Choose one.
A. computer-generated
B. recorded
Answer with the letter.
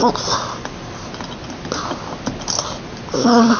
B